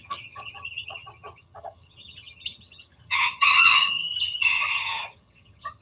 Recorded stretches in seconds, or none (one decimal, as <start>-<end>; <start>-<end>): none